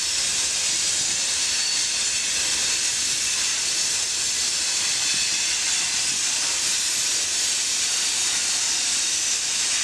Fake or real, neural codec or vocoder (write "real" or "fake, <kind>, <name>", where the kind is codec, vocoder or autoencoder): real